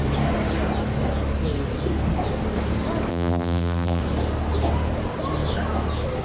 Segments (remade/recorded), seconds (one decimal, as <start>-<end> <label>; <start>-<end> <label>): 0.0-3.1 recorded; 3.1-4.0 remade; 4.0-6.2 recorded